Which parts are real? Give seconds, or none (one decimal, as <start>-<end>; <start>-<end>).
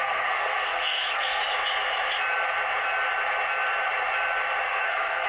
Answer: 1.4-4.6